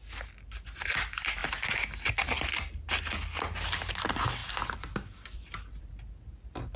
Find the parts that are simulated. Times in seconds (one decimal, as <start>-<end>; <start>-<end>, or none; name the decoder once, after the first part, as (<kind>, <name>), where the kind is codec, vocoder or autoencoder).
4.4-5.9 (vocoder, BigVGAN v2)